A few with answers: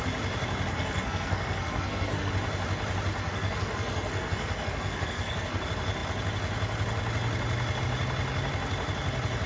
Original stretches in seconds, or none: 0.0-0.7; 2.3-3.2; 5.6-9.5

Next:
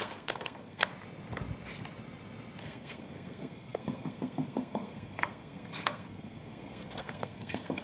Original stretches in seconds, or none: 0.9-2.6

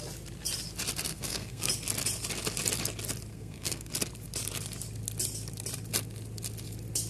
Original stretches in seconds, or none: 0.0-1.1; 1.7-3.3; 3.9-7.1

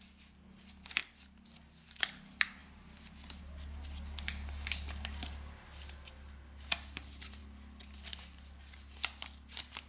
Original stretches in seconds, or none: 0.0-9.9

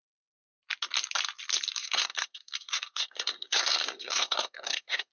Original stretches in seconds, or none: 0.0-1.8

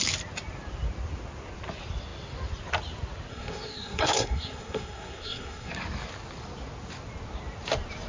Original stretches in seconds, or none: 0.0-3.3; 5.7-8.1

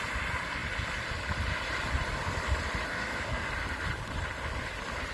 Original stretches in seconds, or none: 0.0-2.9; 3.5-5.1